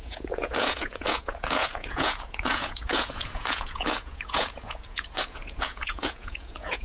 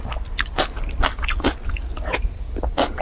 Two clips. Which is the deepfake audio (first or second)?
first